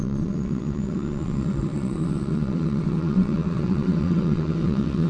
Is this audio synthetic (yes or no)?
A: yes